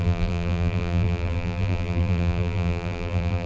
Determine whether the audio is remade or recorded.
remade